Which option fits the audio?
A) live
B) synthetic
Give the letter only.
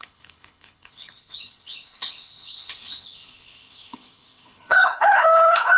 B